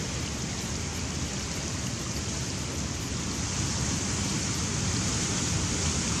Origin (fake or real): real